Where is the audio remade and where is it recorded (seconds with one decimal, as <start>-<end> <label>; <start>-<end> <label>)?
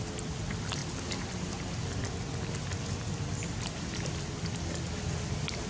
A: 0.0-5.7 recorded